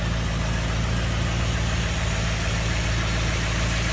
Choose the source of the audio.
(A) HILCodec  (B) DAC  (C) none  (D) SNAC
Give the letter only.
C